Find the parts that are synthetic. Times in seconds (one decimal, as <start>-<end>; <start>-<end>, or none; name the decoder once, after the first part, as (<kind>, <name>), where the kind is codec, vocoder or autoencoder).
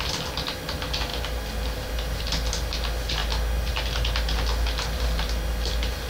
1.1-2.2 (vocoder, BigVGAN v2)